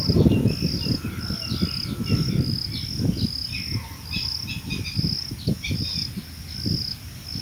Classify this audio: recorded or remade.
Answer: recorded